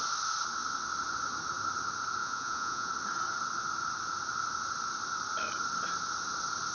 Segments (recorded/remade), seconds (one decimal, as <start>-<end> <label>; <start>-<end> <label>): 0.0-2.2 recorded; 2.2-2.9 remade; 2.9-6.7 recorded